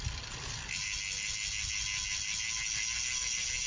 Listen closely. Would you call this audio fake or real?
real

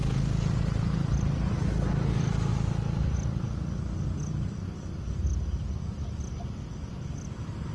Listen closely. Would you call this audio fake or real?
real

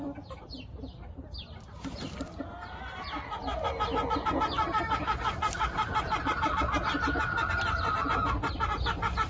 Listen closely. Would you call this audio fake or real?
real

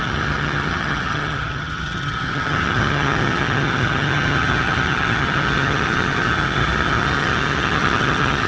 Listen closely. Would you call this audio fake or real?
fake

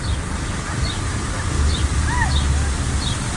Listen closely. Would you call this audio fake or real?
real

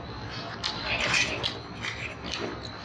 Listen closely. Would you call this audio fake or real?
real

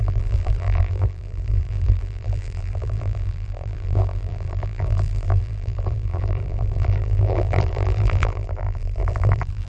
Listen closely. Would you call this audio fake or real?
fake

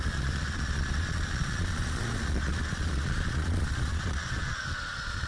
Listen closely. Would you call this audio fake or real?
fake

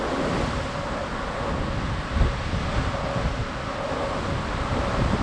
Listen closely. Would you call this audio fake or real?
real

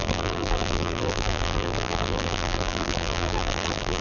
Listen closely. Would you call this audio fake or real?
fake